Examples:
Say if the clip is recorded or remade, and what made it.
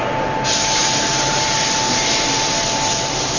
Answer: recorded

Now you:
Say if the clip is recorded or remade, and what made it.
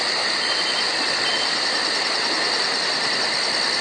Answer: recorded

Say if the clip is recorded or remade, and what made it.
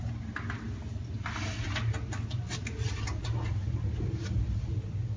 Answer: recorded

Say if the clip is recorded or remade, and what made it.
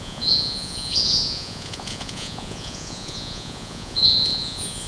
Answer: remade, vocoder, Vocos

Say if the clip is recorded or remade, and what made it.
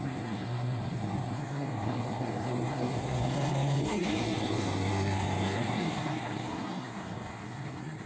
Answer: remade, codec, SNAC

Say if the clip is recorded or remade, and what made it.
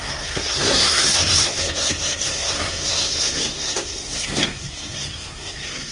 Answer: remade, codec, SNAC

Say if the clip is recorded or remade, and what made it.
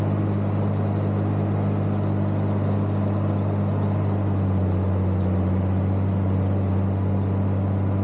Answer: recorded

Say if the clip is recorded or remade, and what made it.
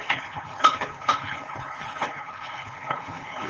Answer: remade, codec, HILCodec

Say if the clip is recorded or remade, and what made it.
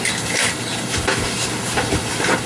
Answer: recorded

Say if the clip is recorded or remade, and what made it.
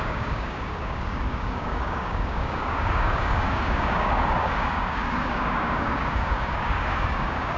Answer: remade, codec, DAC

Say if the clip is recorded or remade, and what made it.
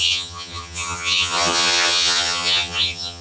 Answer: remade, vocoder, HiFi-GAN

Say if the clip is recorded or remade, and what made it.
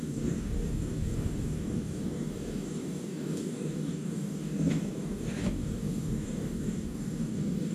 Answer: remade, codec, DAC